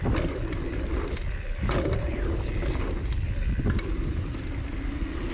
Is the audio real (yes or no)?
yes